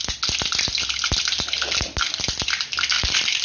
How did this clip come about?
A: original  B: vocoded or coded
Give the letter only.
A